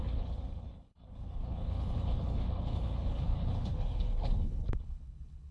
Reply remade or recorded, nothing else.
remade